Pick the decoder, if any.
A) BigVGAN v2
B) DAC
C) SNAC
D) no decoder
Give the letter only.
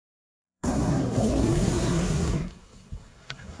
C